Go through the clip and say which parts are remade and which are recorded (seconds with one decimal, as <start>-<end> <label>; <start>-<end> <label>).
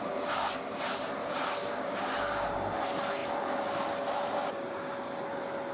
0.0-1.6 recorded; 1.6-2.2 remade; 2.2-5.7 recorded